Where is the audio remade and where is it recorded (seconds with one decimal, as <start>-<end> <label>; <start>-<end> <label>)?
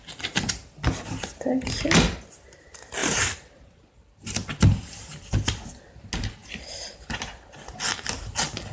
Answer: 0.0-3.0 recorded; 3.0-3.9 remade; 3.9-8.7 recorded